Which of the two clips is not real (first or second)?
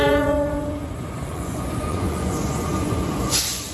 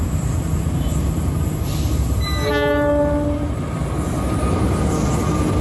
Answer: first